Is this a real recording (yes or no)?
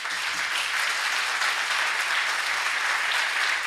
yes